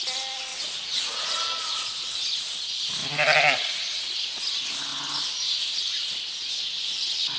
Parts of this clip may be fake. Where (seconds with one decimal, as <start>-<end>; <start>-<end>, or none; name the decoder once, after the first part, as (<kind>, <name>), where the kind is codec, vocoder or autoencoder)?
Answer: 0.5-1.4 (vocoder, Vocos); 3.0-4.4